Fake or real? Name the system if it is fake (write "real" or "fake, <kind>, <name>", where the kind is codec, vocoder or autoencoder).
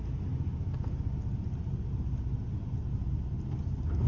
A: real